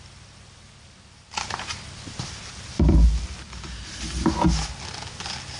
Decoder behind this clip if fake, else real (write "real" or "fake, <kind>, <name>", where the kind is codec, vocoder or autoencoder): real